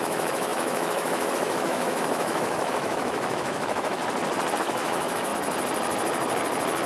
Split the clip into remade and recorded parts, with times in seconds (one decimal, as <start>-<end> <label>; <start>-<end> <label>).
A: 0.0-4.0 remade; 4.0-4.6 recorded; 4.6-5.3 remade; 5.3-6.9 recorded